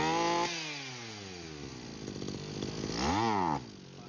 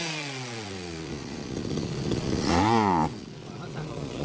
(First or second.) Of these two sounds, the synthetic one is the second